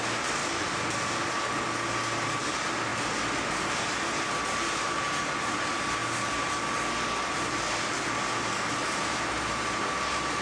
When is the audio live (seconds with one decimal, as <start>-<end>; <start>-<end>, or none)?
0.0-10.4